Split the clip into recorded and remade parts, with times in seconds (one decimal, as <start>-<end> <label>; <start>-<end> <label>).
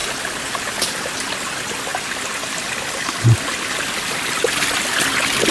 0.0-5.5 recorded